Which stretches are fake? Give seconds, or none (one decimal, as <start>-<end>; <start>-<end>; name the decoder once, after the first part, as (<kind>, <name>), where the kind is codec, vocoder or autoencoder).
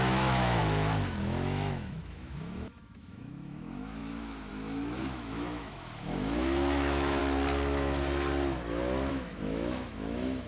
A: 0.0-7.2 (autoencoder, DAC-VAE); 9.1-10.5